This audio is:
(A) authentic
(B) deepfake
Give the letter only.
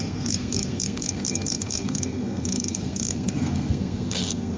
B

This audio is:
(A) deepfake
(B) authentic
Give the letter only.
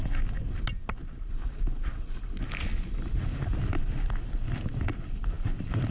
B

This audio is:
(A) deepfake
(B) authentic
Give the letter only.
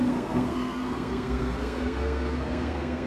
A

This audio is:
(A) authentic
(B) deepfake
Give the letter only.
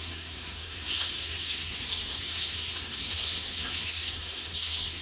B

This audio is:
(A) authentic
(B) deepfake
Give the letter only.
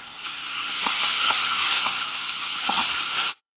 B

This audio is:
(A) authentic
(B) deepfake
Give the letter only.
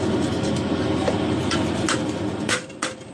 A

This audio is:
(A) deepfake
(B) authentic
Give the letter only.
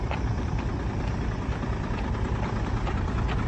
B